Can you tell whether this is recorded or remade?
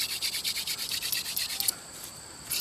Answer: remade